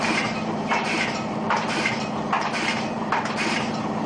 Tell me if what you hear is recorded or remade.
remade